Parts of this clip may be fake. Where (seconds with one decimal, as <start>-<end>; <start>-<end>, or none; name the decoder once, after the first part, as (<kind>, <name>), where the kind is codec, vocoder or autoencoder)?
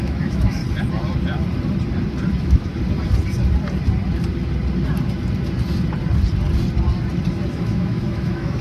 0.0-0.6 (autoencoder, DAC-VAE); 2.3-2.7; 7.5-8.6